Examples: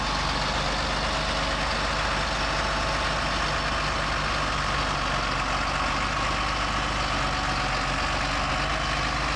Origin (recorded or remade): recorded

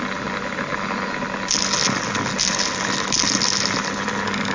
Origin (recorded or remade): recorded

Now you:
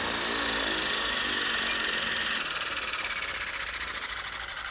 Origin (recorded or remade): recorded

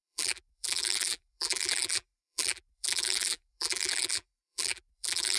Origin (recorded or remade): remade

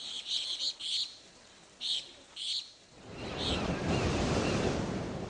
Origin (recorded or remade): remade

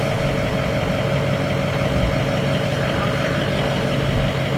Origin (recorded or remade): recorded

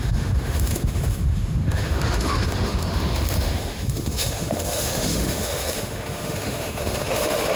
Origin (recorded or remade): remade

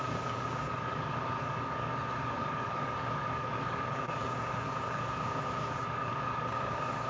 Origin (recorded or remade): remade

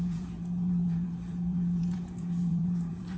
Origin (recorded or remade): remade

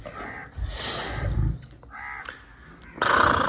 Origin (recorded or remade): recorded